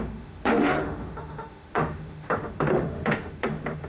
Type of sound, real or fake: fake